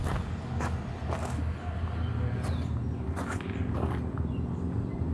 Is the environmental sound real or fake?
real